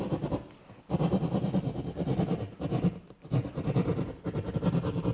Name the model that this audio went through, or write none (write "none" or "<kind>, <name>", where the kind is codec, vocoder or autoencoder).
none